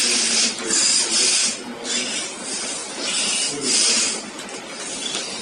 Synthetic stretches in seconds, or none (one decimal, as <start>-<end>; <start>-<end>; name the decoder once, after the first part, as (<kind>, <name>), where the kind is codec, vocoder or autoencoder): 0.8-1.4 (vocoder, BigVGAN v2)